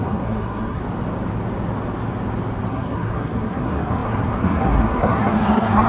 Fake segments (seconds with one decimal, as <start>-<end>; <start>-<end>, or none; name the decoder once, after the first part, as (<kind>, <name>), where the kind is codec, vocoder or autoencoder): 0.0-0.8 (codec, SNAC); 2.7-5.9